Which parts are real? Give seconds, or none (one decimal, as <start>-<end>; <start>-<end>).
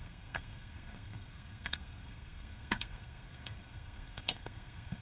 none